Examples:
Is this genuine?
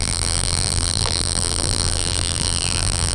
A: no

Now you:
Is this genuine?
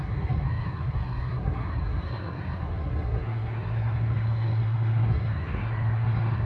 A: no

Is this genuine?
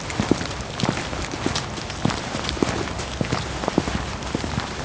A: yes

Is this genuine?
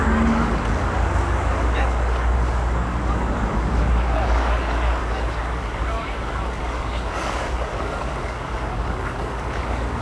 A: no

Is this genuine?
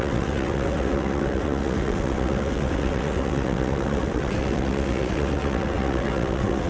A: no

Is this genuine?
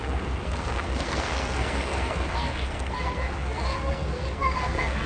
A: no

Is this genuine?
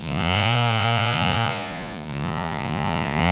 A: no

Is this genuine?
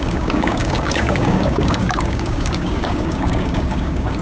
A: no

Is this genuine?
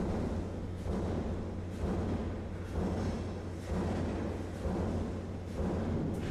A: yes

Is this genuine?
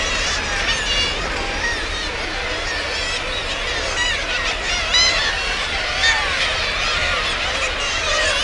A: no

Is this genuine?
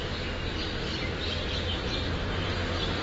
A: yes